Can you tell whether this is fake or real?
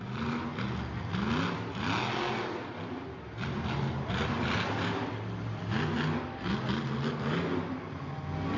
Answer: real